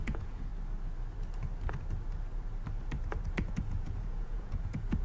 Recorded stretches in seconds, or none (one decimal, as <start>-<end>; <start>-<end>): 0.5-3.5